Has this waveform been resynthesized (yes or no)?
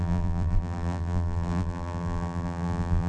yes